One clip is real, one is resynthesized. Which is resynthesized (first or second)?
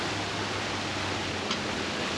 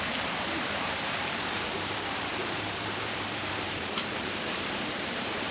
second